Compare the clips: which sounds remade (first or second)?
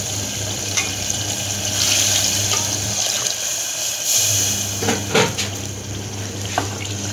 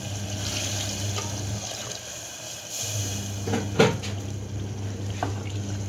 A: first